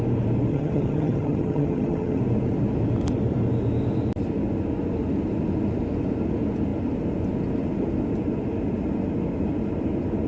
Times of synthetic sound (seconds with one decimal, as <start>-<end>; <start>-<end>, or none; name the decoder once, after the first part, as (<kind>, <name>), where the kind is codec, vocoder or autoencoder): 0.5-2.2 (vocoder, HiFi-GAN)